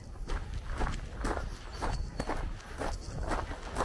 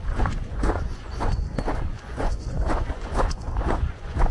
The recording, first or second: first